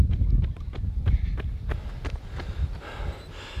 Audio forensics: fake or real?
real